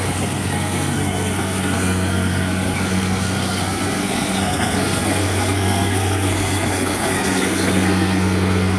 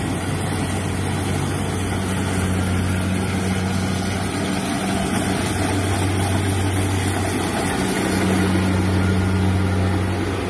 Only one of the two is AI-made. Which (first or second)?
first